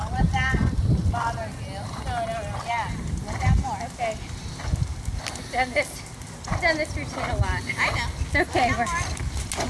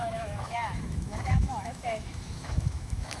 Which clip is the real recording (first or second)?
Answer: first